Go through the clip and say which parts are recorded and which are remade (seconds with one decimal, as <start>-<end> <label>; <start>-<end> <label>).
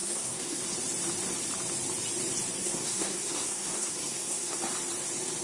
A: 0.0-0.6 remade; 0.6-2.6 recorded; 2.6-4.6 remade; 4.6-5.4 recorded